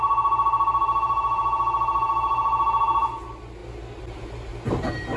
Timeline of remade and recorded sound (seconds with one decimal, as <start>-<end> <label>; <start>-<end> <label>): 0.0-5.2 recorded